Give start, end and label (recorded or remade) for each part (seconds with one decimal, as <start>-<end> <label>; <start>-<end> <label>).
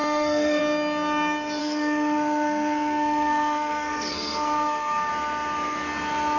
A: 0.0-0.6 remade; 0.6-1.6 recorded; 1.6-5.1 remade; 5.1-6.4 recorded